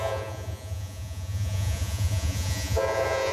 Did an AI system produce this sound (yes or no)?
yes